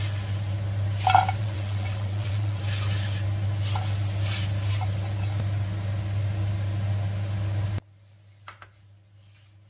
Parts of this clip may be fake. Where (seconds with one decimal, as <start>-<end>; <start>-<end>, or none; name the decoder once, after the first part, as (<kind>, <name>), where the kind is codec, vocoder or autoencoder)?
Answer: 1.4-2.6 (vocoder, WaveNeXt)

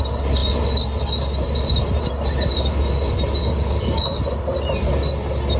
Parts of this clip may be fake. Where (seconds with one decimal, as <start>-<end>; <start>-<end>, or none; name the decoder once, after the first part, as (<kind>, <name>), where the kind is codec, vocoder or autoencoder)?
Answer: 3.4-4.0 (codec, DAC)